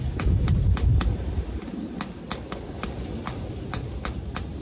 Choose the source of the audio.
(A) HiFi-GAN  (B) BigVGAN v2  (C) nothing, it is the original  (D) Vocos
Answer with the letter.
C